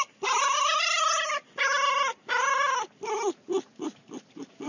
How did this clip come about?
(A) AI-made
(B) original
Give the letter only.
B